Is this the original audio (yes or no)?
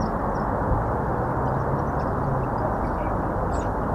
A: yes